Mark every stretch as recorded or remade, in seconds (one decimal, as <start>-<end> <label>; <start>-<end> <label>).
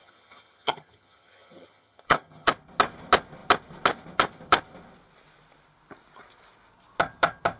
0.0-2.5 remade; 2.5-7.6 recorded